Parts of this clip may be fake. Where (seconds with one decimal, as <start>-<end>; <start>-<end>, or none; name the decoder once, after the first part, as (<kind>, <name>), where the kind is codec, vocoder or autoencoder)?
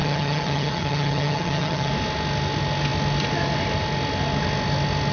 0.0-1.9 (vocoder, HiFi-GAN)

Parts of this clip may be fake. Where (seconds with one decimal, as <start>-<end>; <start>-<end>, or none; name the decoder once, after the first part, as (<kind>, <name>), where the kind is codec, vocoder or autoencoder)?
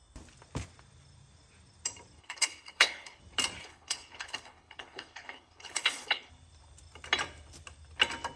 2.2-3.2 (codec, HILCodec); 3.6-6.3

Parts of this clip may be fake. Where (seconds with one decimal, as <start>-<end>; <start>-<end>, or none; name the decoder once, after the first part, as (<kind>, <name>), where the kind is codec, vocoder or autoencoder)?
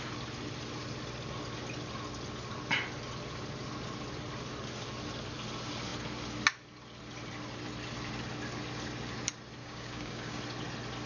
9.6-10.4 (codec, DAC)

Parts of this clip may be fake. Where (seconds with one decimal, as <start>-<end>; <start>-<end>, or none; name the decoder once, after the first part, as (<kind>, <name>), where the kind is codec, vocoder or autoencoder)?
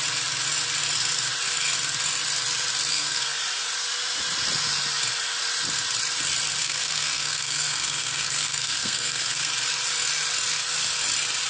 2.9-3.4 (codec, SNAC); 6.6-9.5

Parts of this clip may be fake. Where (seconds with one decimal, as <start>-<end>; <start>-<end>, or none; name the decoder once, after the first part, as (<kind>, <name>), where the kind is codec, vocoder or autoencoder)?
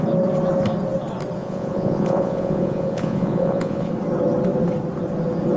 1.4-3.9 (vocoder, Vocos)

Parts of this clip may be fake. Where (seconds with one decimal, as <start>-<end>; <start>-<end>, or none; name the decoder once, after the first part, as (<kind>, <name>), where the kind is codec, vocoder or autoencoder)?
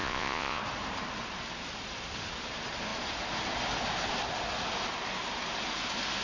0.0-0.6 (vocoder, Vocos)